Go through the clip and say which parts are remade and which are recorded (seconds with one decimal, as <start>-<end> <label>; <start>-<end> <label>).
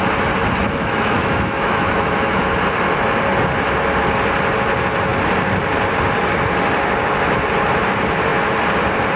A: 0.0-0.6 recorded; 0.6-2.4 remade; 2.4-9.2 recorded